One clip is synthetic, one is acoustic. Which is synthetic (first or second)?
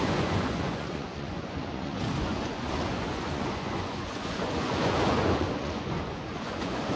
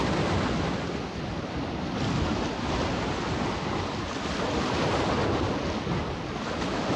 first